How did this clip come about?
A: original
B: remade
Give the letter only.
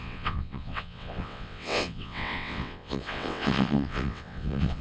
B